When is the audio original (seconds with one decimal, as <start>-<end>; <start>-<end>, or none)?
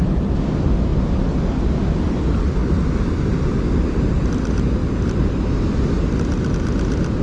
0.0-7.2